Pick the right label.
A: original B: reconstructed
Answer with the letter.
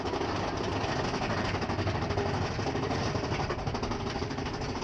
A